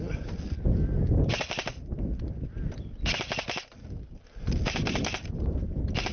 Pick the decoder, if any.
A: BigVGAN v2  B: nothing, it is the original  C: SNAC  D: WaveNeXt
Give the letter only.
A